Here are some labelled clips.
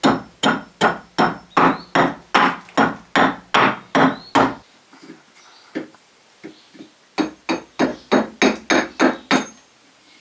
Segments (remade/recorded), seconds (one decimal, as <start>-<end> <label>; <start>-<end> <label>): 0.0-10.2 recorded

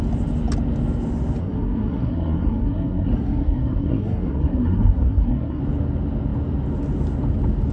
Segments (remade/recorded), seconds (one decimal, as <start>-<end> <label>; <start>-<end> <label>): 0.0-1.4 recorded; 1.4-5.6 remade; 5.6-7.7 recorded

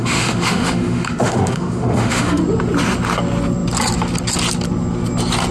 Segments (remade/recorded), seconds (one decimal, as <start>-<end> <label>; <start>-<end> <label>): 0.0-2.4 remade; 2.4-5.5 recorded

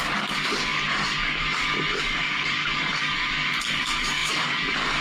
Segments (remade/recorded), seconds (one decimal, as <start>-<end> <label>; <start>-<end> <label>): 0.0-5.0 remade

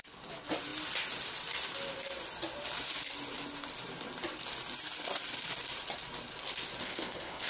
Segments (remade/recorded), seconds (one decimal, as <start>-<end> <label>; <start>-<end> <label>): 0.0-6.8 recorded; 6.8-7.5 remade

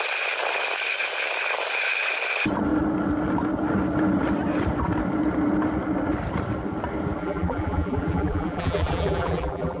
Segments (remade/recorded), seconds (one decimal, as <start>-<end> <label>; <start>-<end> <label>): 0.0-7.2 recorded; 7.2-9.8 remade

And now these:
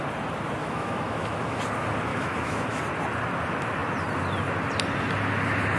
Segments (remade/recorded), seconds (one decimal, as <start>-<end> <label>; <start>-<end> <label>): 0.0-0.6 recorded; 0.6-1.6 remade; 1.6-2.1 recorded; 2.1-2.8 remade; 2.8-5.8 recorded

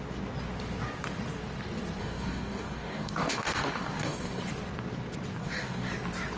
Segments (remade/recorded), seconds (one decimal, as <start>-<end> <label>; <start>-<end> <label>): 0.0-2.0 recorded; 2.0-4.4 remade; 4.4-5.4 recorded; 5.4-5.9 remade; 5.9-6.4 recorded